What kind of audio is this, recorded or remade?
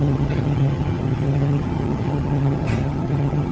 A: remade